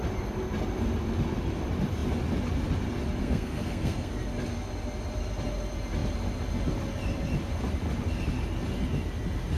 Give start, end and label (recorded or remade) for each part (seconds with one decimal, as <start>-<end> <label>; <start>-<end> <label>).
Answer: 0.0-3.2 recorded; 3.2-4.1 remade; 4.1-9.6 recorded